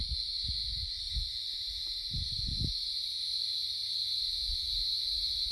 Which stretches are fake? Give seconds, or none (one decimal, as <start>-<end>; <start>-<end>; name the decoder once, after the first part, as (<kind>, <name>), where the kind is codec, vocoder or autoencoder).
none